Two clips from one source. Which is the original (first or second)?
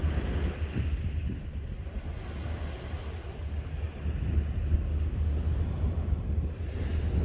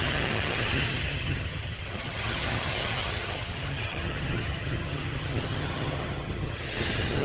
first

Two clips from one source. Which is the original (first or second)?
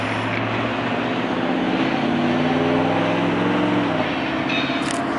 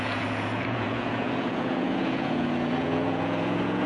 first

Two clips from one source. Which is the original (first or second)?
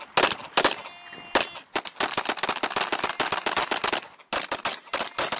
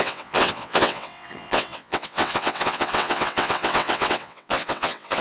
first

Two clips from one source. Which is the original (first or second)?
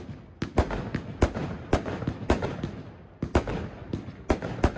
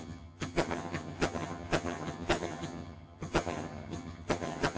first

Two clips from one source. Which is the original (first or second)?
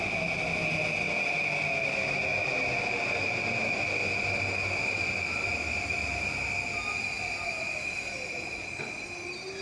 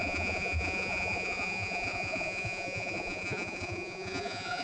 first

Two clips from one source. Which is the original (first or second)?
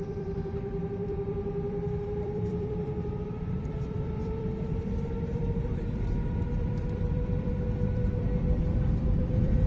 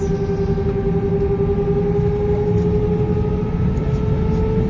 second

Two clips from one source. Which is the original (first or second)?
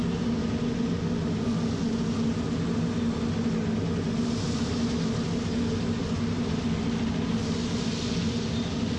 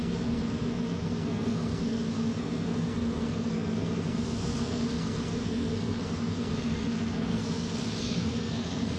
first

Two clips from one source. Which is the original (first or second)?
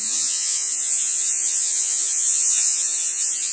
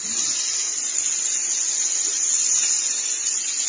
second